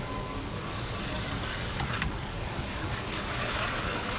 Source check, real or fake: fake